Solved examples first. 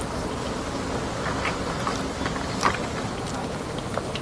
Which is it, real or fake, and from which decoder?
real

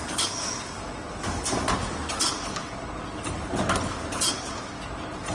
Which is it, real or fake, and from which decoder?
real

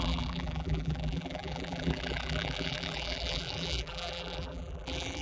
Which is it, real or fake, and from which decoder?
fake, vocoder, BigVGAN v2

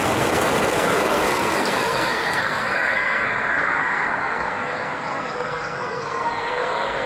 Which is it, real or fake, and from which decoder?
fake, codec, SNAC